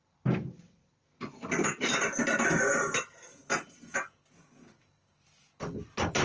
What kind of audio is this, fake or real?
real